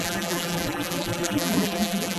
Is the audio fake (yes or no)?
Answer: yes